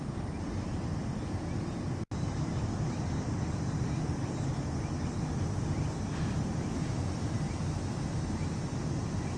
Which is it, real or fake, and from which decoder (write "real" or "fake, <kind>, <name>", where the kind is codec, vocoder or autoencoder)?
real